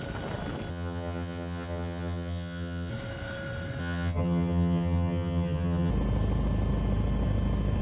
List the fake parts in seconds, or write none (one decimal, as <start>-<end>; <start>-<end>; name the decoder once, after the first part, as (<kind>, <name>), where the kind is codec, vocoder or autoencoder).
0.7-2.9 (vocoder, HiFi-GAN); 3.8-5.9